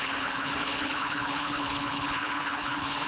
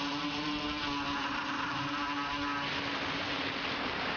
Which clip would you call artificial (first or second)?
first